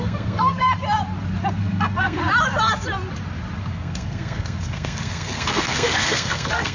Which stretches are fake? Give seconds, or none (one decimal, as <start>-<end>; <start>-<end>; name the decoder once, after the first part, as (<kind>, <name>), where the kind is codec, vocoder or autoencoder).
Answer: 0.0-0.7 (codec, SNAC); 1.6-2.2; 3.6-6.7